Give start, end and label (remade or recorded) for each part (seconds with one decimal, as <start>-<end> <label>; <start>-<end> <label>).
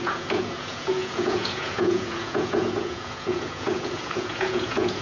0.0-5.0 remade